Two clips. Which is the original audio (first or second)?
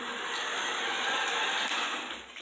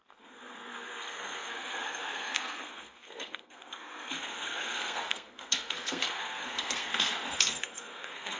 first